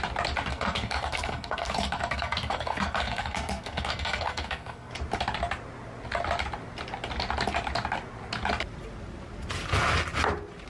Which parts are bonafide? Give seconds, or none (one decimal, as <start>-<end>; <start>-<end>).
0.0-0.5; 4.9-10.7